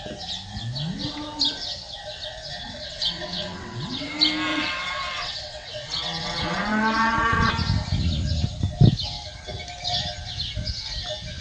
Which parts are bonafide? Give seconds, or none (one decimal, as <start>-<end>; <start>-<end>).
0.0-2.6; 4.1-4.5; 7.5-11.4